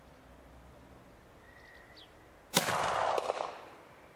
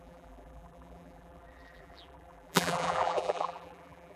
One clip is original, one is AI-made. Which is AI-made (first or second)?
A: second